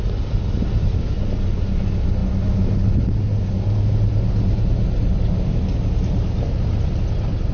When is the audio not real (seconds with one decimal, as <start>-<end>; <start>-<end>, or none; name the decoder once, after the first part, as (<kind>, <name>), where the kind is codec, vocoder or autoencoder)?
none